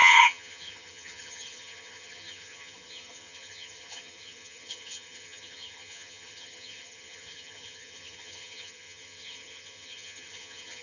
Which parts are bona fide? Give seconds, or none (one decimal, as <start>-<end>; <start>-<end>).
none